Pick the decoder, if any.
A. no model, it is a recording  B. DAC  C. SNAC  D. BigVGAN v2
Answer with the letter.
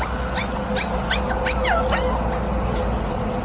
A